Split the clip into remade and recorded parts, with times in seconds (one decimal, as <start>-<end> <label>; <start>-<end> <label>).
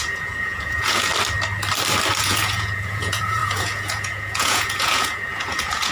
0.0-1.1 remade; 1.1-2.2 recorded; 2.2-5.9 remade